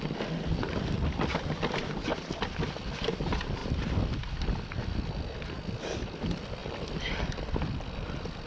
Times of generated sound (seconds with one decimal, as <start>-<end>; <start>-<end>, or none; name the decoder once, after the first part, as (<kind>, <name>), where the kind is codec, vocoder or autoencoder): 0.0-2.1 (vocoder, BigVGAN v2); 2.7-3.6; 5.8-8.5